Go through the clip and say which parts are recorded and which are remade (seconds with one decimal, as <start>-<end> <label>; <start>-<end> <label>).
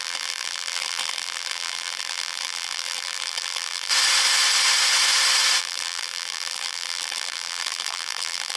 0.0-3.9 remade; 3.9-5.6 recorded; 5.6-8.6 remade